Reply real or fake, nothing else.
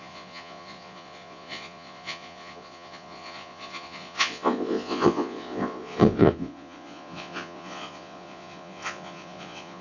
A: fake